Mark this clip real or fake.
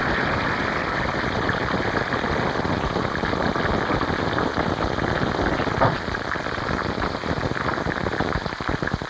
fake